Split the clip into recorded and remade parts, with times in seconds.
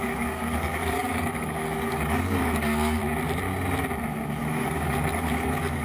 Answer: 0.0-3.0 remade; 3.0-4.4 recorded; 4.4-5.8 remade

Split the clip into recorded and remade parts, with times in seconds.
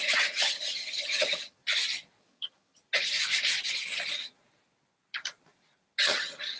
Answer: 0.0-1.6 remade; 1.6-2.2 recorded; 2.2-2.8 remade; 2.8-6.0 recorded; 6.0-6.6 remade